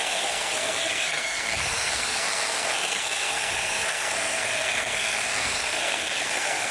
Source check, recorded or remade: remade